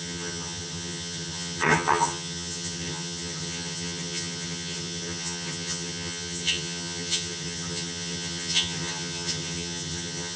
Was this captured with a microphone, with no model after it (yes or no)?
no